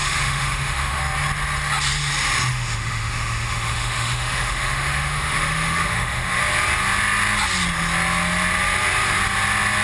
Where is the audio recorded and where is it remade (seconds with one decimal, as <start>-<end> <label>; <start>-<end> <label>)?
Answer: 0.0-1.0 remade; 1.0-2.5 recorded; 2.5-6.4 remade; 6.4-9.8 recorded

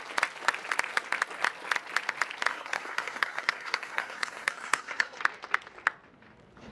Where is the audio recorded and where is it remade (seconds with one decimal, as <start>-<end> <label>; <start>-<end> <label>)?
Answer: 0.0-2.5 recorded; 2.5-5.2 remade; 5.2-6.7 recorded